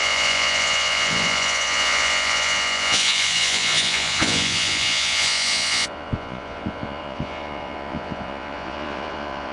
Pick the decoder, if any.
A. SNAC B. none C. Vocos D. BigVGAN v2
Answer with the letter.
C